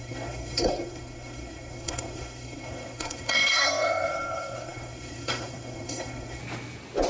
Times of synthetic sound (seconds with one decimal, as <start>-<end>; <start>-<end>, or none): 0.0-6.4